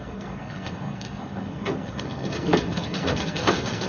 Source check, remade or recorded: remade